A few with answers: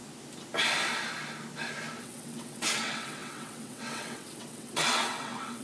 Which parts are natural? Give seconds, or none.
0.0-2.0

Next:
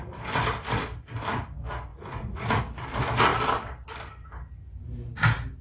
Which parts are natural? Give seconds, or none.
0.0-1.9; 2.6-5.6

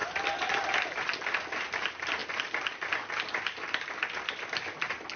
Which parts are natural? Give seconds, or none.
0.0-5.2

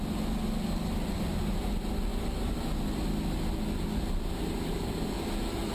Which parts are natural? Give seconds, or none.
0.0-5.7

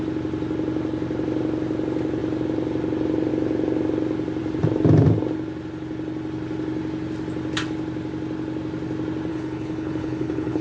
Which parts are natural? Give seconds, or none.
0.0-9.3

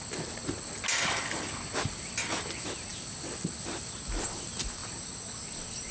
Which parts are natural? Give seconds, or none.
0.0-5.9

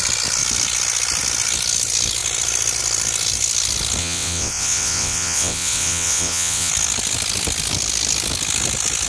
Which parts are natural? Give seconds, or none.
0.0-4.0; 6.7-9.1